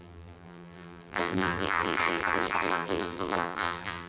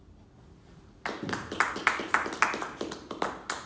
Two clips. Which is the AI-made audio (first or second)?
first